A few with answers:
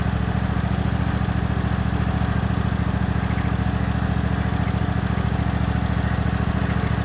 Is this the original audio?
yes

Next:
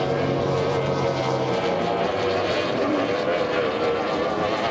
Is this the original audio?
yes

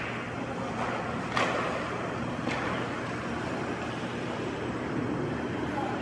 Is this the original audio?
yes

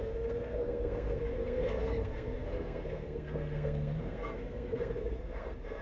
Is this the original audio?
no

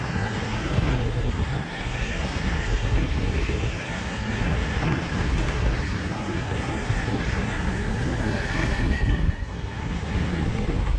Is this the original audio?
no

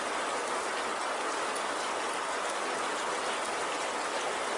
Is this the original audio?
yes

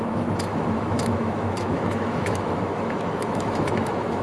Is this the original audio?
no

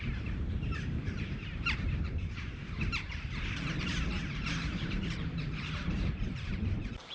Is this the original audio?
no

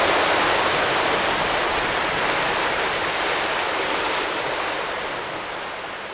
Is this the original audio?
yes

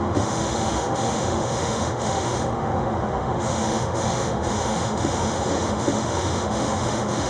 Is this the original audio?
no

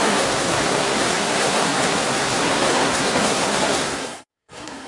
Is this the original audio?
no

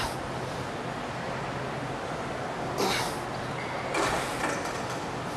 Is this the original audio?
yes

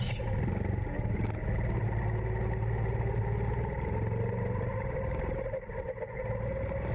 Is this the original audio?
yes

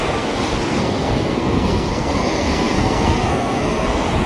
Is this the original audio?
no